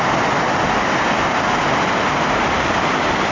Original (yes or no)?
yes